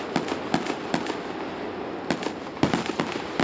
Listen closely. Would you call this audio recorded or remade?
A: recorded